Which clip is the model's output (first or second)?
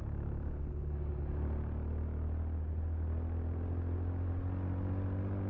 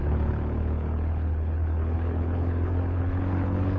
second